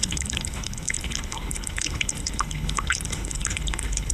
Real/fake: fake